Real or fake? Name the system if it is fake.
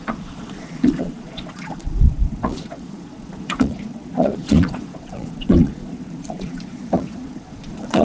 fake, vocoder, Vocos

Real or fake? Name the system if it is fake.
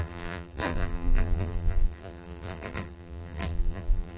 fake, vocoder, BigVGAN v2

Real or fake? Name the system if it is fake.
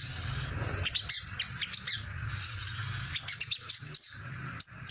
real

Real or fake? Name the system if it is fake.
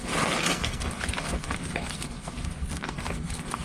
fake, codec, SNAC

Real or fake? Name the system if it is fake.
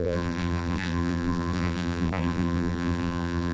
fake, vocoder, BigVGAN v2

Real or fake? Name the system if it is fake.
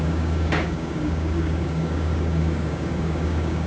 fake, codec, DAC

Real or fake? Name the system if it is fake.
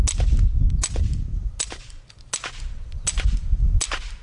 real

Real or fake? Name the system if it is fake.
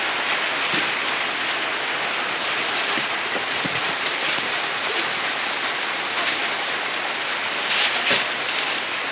real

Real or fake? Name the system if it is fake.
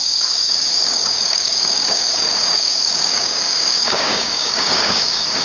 fake, codec, DAC